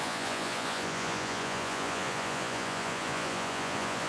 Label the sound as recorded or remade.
remade